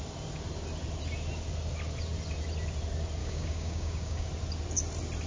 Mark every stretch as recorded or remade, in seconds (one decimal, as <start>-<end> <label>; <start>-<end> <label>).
0.0-3.2 recorded; 3.2-4.3 remade; 4.3-5.3 recorded